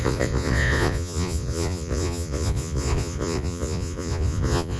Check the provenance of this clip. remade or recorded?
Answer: remade